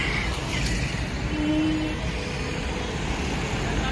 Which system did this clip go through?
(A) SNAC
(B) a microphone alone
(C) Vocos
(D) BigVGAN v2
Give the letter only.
B